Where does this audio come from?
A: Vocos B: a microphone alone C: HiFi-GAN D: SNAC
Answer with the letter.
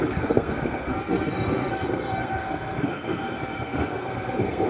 D